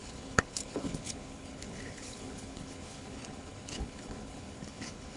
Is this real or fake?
fake